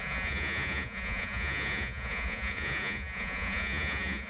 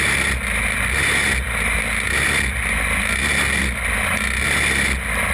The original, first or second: second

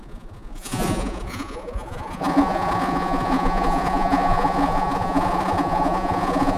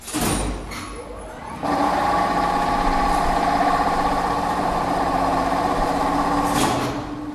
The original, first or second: second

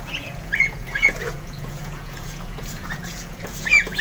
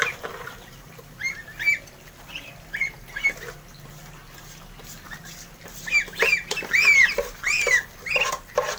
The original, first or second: second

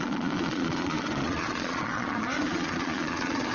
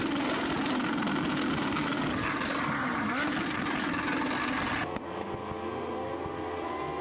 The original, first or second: second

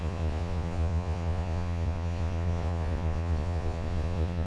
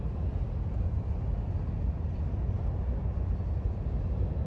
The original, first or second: second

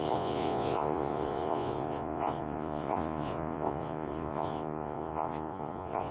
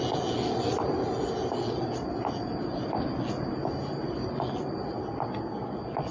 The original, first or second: second